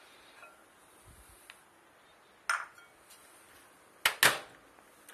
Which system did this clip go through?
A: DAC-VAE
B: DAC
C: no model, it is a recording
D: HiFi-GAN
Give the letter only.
C